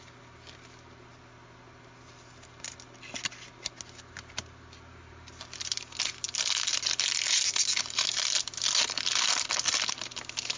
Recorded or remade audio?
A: recorded